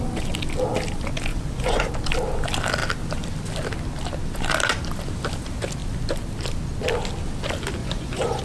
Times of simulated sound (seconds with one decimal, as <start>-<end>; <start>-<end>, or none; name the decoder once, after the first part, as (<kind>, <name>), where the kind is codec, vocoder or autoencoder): 1.3-1.9 (vocoder, Vocos); 7.8-8.4